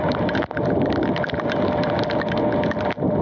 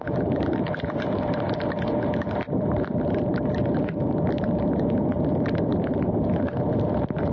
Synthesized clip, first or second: second